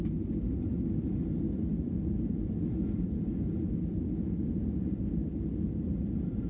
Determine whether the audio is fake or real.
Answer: real